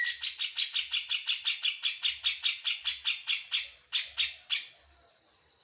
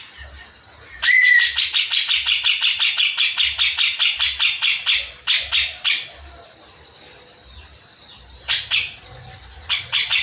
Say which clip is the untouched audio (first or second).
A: first